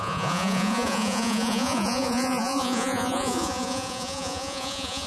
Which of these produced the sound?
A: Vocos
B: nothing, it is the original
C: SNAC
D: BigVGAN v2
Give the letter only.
A